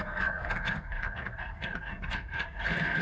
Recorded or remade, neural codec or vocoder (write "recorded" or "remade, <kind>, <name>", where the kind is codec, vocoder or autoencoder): remade, codec, SNAC